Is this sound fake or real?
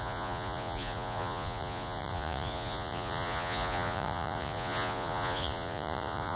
fake